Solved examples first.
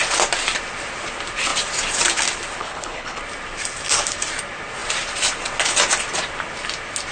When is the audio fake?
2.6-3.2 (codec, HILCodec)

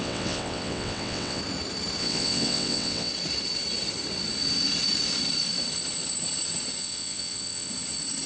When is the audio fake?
0.0-1.4 (vocoder, WaveNeXt); 2.0-3.1; 6.8-7.7